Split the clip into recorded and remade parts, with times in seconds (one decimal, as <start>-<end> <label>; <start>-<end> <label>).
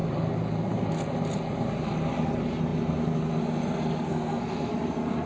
0.0-4.1 recorded; 4.1-4.7 remade; 4.7-5.3 recorded